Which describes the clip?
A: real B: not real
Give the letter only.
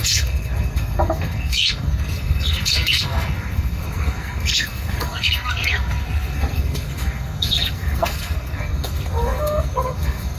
B